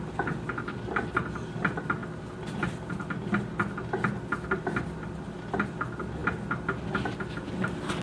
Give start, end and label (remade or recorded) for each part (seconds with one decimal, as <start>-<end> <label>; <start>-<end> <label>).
0.0-8.0 recorded